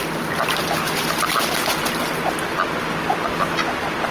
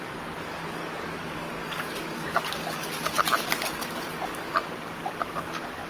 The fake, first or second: second